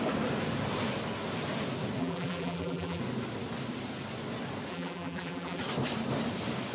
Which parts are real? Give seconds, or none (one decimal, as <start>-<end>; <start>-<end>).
0.0-2.0; 3.0-4.7; 5.6-6.7